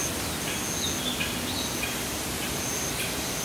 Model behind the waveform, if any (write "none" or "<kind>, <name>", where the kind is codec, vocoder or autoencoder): none